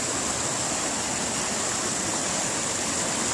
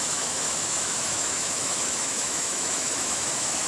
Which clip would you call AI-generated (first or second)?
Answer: second